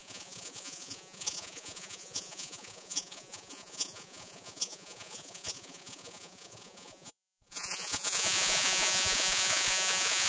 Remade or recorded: remade